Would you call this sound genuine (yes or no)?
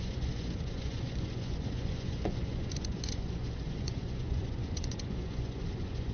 no